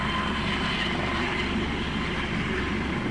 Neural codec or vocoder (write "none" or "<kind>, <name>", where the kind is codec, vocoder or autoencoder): none